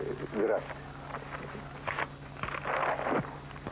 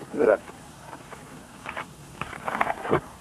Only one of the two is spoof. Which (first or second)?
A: second